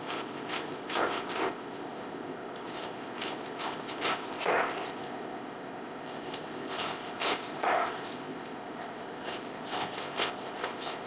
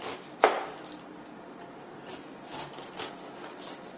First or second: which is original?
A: second